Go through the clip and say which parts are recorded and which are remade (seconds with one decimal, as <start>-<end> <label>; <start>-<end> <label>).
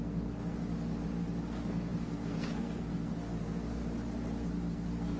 0.0-0.7 remade; 0.7-1.4 recorded; 1.4-3.8 remade; 3.8-4.7 recorded; 4.7-5.2 remade